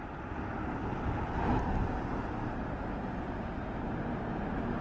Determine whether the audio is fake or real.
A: real